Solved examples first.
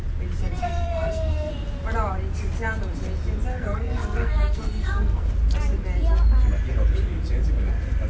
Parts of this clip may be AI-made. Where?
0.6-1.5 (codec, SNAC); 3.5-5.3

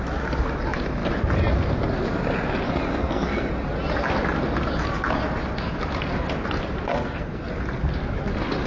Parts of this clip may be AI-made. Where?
2.9-3.5 (codec, SNAC); 6.9-7.5

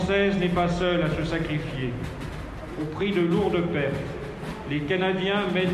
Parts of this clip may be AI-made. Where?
none

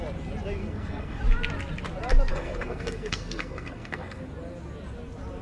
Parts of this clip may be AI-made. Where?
0.6-1.2 (codec, SNAC); 2.3-4.2

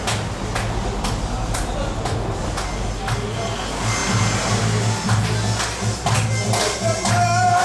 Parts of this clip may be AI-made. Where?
none

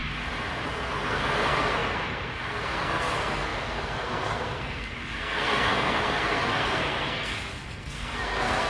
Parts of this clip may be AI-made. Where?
0.6-8.7 (codec, SNAC)

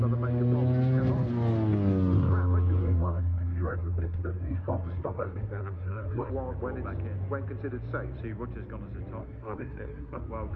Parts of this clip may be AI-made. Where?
2.8-6.3 (codec, SNAC); 9.2-10.2